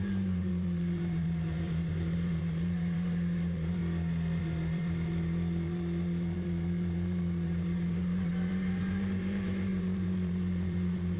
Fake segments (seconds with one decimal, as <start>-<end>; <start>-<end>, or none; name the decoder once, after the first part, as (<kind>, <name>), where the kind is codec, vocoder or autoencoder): 0.0-3.8 (vocoder, BigVGAN v2); 4.4-11.2